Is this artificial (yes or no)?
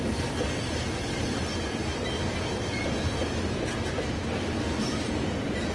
no